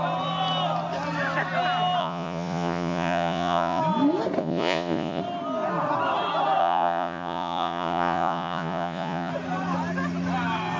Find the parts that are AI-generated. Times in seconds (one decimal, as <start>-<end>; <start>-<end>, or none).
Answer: 2.0-3.8; 4.4-5.2; 6.6-9.3